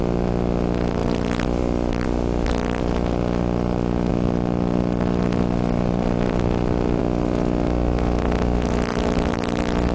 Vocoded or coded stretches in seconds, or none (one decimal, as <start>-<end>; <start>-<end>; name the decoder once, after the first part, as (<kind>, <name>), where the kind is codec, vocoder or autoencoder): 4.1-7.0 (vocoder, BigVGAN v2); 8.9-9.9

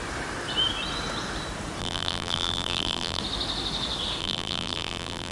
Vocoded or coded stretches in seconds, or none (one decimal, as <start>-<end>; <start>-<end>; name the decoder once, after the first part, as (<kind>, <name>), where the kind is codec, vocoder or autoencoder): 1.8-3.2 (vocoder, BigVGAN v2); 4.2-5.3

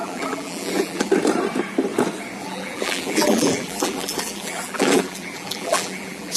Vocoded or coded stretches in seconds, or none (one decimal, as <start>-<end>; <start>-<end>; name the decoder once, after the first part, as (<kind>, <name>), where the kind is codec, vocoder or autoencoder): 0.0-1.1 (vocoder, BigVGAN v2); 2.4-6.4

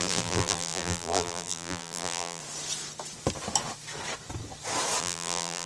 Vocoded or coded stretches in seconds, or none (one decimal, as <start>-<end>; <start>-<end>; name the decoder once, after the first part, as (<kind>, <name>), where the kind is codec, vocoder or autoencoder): 0.0-2.4 (vocoder, BigVGAN v2); 5.0-5.7